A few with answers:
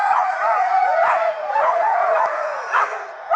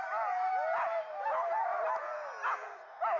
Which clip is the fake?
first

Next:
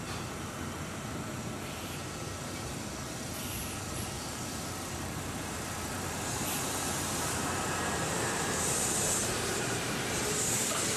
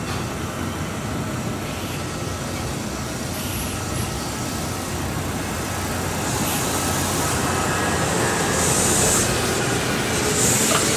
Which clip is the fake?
first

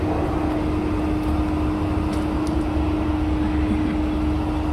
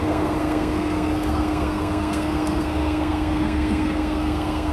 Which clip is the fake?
second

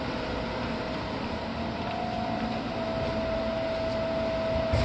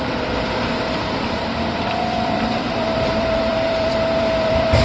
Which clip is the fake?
second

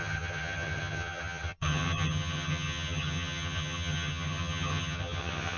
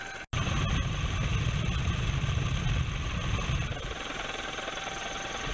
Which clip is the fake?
first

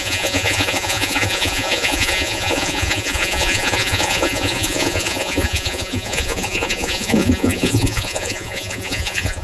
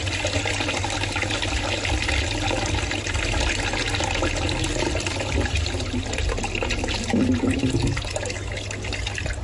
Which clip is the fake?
first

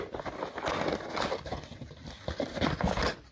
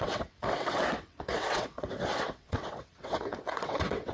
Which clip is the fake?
second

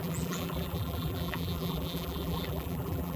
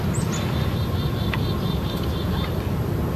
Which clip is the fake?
first